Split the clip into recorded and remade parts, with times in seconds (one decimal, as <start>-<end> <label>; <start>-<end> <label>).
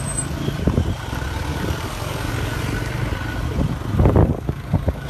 0.0-1.5 recorded; 1.5-2.6 remade; 2.6-4.2 recorded; 4.2-5.1 remade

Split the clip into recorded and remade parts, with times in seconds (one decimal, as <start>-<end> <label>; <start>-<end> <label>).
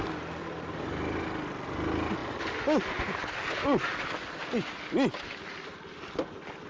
0.0-6.7 recorded